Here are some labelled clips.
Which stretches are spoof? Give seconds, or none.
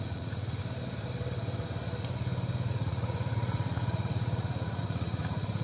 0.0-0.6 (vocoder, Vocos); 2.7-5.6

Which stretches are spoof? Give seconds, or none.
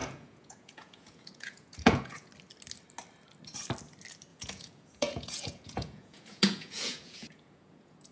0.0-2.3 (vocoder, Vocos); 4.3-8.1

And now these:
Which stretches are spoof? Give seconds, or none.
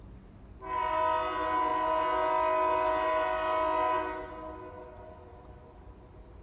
none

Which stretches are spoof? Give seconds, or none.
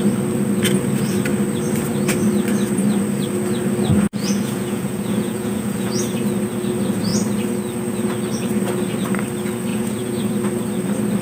3.9-6.0 (vocoder, Vocos); 9.7-10.3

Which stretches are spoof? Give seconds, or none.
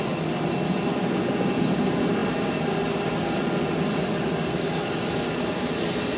none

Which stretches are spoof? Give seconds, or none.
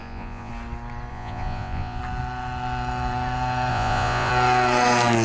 0.0-0.5 (vocoder, Vocos); 1.1-2.0; 3.7-4.3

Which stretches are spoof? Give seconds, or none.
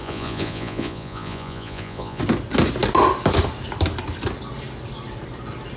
0.0-2.2 (vocoder, Vocos)